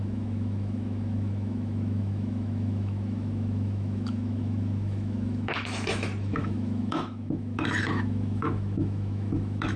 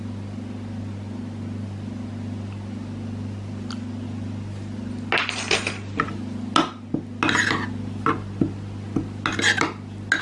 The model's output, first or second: first